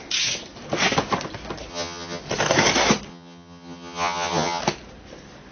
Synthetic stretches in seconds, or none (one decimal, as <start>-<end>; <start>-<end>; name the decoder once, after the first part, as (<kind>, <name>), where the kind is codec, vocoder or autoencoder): 1.7-2.2 (vocoder, HiFi-GAN); 3.1-4.6